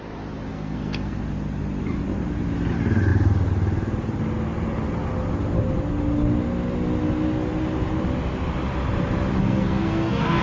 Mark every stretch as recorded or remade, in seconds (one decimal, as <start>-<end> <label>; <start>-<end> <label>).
0.0-0.5 recorded; 0.5-1.2 remade; 1.2-9.4 recorded; 9.4-10.4 remade